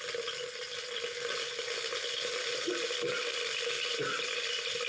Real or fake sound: real